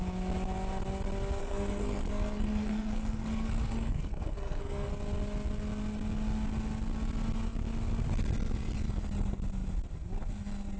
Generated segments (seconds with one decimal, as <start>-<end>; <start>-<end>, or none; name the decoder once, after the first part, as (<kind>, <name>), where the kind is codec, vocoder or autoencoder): 1.4-4.9 (codec, SNAC)